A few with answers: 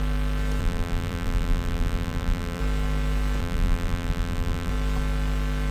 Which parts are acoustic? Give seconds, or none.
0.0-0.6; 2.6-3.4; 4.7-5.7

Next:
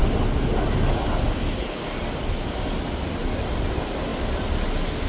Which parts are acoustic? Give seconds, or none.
0.0-5.1

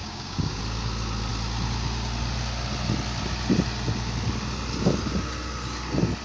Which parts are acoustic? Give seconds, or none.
0.6-6.2

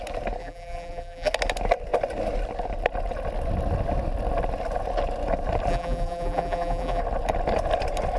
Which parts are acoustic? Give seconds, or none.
0.0-0.4; 1.3-5.7; 7.0-8.2

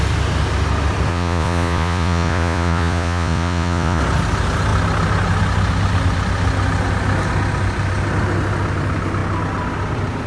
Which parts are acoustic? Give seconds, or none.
0.0-1.1; 4.0-10.3

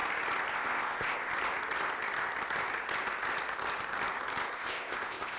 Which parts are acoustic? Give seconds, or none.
0.0-0.5; 1.3-4.5

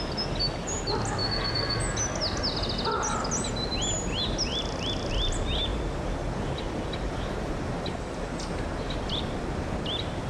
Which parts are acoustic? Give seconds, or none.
0.0-10.3